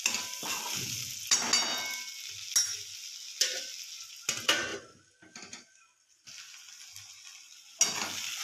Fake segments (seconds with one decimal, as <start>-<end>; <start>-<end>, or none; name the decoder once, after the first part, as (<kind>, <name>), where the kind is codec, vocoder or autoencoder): none